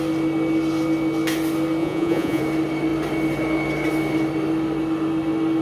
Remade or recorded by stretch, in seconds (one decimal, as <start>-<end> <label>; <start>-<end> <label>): 0.0-1.8 recorded; 1.8-2.4 remade; 2.4-5.6 recorded

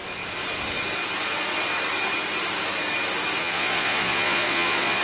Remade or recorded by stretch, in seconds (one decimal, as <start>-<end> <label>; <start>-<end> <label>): 0.0-3.4 recorded; 3.4-5.0 remade

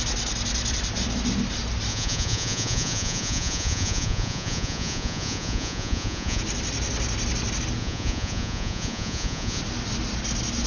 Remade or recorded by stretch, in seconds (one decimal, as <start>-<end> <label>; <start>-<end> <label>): 0.0-1.9 recorded; 1.9-6.4 remade; 6.4-7.8 recorded; 7.8-9.6 remade; 9.6-10.7 recorded

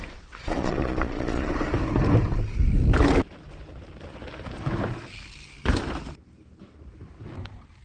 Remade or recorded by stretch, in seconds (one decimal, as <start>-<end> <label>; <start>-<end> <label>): 0.0-0.4 recorded; 0.4-1.5 remade; 1.5-7.8 recorded

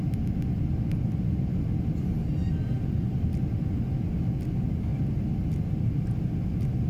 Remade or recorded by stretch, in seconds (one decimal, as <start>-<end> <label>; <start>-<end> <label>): 0.0-6.9 recorded

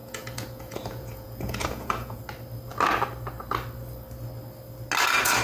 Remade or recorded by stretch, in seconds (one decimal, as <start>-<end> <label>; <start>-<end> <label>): 0.0-2.2 remade; 2.2-5.4 recorded